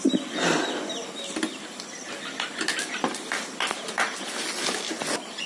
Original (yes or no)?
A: yes